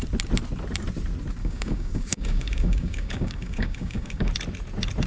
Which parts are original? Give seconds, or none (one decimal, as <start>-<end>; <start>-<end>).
0.0-1.4; 4.3-5.1